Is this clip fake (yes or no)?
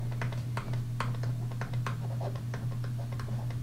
no